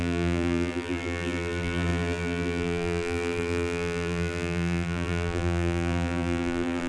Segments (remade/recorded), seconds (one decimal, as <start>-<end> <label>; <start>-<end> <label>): 0.0-6.9 remade